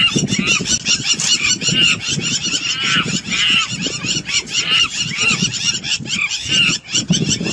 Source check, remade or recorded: recorded